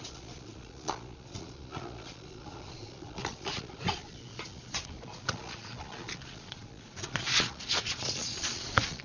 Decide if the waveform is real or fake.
fake